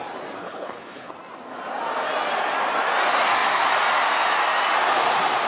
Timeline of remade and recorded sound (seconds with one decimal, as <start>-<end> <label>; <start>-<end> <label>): 0.0-0.4 recorded; 0.4-1.1 remade; 1.1-5.5 recorded